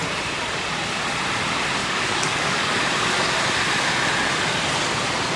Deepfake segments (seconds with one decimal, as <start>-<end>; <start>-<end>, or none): 1.8-2.8